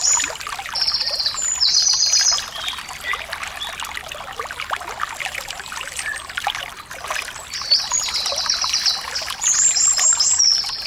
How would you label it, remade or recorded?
recorded